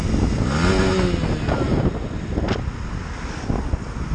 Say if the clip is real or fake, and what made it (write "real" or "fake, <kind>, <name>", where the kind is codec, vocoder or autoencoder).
real